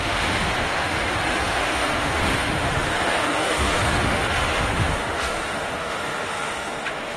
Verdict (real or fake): fake